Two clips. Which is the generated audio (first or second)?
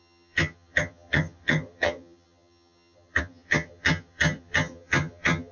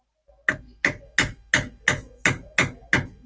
first